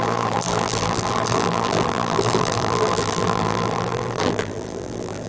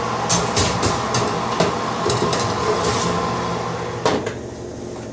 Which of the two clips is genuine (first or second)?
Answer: second